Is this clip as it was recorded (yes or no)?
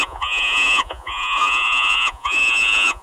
no